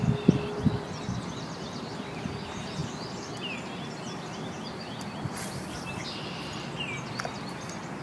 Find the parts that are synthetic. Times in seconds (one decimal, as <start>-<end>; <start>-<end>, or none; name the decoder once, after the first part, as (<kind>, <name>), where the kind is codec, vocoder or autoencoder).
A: none